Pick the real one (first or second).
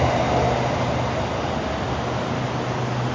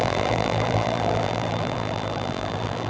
first